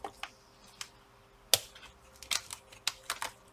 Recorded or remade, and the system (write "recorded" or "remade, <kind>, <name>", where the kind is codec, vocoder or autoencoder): recorded